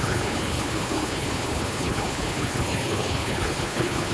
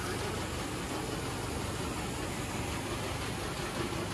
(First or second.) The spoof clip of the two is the first